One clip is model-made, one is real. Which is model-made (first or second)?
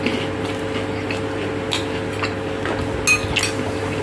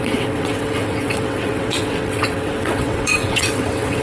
second